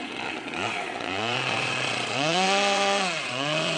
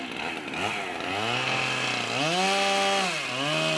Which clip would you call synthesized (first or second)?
first